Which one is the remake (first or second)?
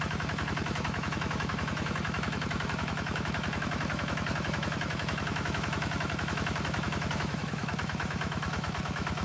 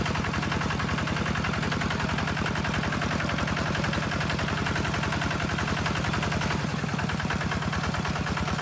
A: first